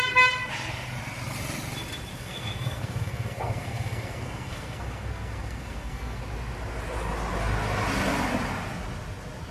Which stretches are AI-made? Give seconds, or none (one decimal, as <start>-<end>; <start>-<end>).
2.1-6.2